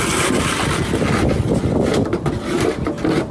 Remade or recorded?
recorded